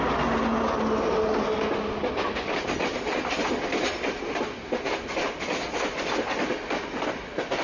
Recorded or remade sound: recorded